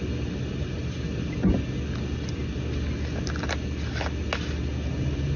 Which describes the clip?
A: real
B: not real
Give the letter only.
A